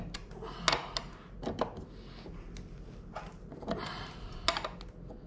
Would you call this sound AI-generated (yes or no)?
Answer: no